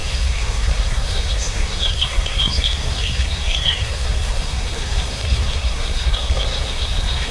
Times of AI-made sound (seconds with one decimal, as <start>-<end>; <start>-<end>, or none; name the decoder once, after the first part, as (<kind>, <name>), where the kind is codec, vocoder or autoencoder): 0.0-7.3 (codec, SNAC)